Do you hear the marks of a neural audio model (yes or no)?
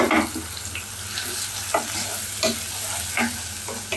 no